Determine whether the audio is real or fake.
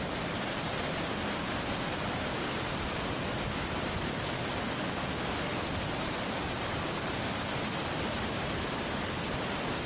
real